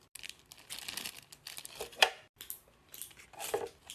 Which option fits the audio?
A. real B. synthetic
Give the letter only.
A